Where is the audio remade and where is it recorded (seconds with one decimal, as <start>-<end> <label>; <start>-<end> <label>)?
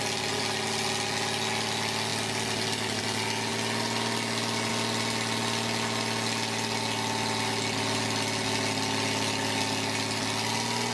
0.0-10.9 recorded